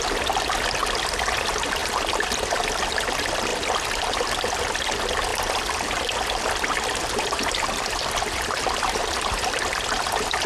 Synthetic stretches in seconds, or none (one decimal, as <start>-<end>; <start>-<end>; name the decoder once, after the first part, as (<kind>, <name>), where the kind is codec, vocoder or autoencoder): 0.8-1.4 (vocoder, BigVGAN v2); 1.8-2.7; 3.5-4.6; 5.3-10.5